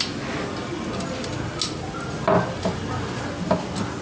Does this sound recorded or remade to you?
recorded